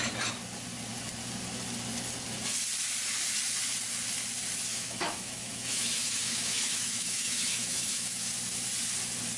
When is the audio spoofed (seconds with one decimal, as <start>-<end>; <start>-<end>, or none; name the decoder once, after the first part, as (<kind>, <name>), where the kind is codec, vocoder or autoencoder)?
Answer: 4.7-8.3 (autoencoder, DAC-VAE)